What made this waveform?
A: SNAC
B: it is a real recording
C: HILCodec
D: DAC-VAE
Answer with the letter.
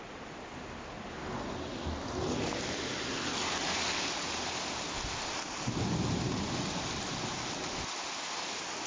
B